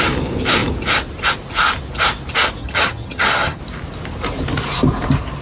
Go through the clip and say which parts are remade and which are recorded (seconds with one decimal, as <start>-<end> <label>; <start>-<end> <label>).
0.0-2.6 recorded; 2.6-3.6 remade; 3.6-5.4 recorded